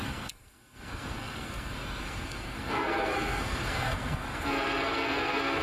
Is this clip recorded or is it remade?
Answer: remade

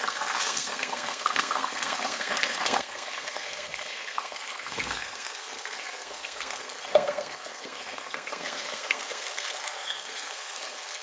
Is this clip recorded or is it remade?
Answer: remade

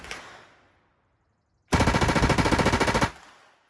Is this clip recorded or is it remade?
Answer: recorded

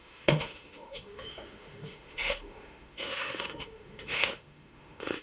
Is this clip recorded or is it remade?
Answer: remade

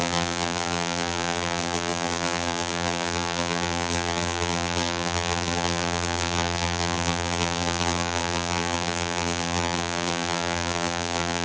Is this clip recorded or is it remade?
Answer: remade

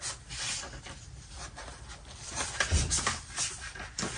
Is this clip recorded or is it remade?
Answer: recorded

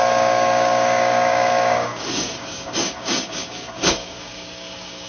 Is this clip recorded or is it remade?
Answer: remade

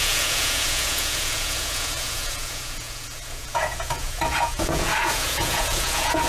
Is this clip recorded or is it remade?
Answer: remade